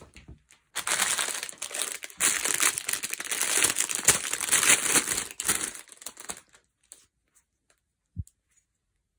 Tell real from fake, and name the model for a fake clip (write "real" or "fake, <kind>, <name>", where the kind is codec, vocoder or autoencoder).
real